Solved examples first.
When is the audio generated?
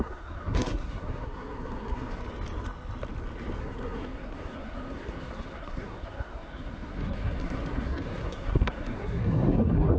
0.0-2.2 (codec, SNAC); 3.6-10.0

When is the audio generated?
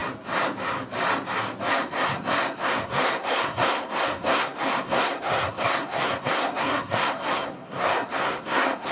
1.8-8.9 (codec, SNAC)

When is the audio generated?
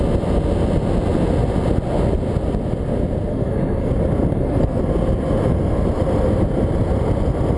3.3-3.9 (codec, SNAC); 4.3-4.8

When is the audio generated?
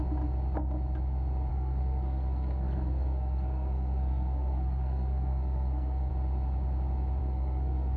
1.5-6.1 (codec, SNAC); 7.2-8.0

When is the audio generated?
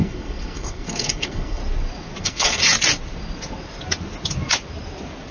0.0-1.6 (codec, SNAC); 2.2-2.6